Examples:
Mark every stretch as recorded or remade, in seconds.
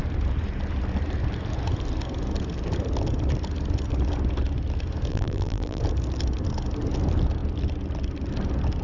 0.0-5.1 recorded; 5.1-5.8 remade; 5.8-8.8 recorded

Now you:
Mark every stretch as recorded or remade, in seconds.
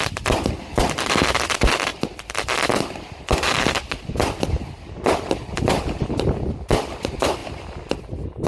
0.0-8.5 recorded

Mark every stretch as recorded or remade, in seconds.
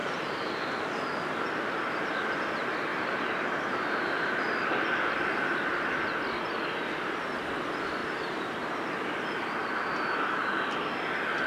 0.0-0.8 remade; 0.8-2.9 recorded; 2.9-4.4 remade; 4.4-8.0 recorded; 8.0-8.7 remade; 8.7-11.5 recorded